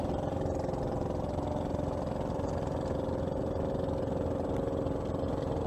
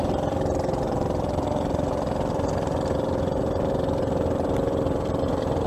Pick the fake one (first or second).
second